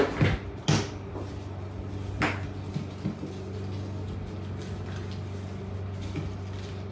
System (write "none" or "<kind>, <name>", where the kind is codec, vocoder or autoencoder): none